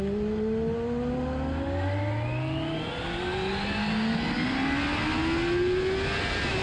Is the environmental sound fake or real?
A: real